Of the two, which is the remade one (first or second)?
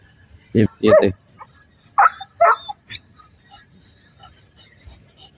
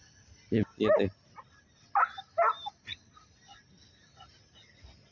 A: first